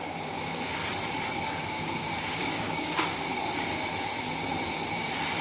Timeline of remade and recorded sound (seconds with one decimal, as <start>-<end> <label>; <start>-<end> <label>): 0.0-0.8 remade; 0.8-1.5 recorded; 1.5-3.3 remade; 3.3-5.4 recorded